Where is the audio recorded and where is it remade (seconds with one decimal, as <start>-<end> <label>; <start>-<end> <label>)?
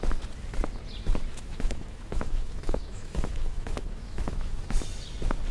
0.0-1.3 recorded; 1.3-4.6 remade; 4.6-5.5 recorded